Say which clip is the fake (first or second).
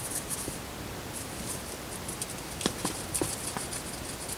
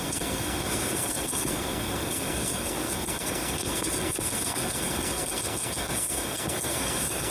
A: second